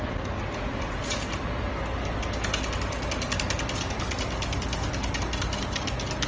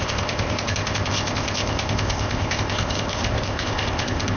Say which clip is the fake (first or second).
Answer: second